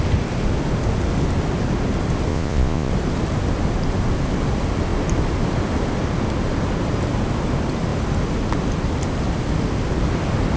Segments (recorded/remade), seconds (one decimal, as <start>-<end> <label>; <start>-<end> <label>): 0.0-2.3 recorded; 2.3-2.9 remade; 2.9-10.6 recorded